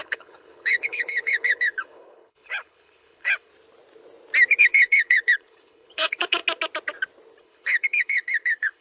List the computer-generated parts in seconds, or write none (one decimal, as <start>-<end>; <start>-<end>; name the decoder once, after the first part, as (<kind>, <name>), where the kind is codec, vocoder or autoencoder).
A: 0.0-3.5 (codec, HILCodec); 4.6-6.4; 7.4-8.8